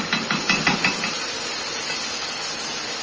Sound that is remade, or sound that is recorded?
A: recorded